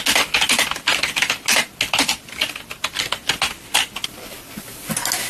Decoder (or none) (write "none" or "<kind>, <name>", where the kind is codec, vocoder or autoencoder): none